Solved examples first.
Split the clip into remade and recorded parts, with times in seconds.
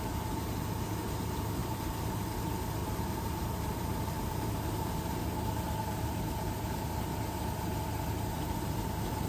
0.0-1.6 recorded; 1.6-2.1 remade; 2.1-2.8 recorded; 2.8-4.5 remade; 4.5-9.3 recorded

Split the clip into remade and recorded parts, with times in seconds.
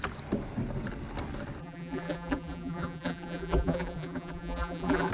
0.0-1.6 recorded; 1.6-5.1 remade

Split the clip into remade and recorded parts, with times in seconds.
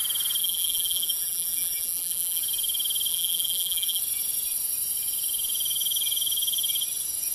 0.0-0.4 recorded; 0.4-2.4 remade; 2.4-3.1 recorded; 3.1-4.0 remade; 4.0-7.3 recorded